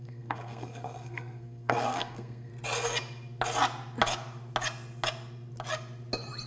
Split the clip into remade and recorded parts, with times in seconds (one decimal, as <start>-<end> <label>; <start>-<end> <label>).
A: 0.0-2.5 remade; 2.5-6.5 recorded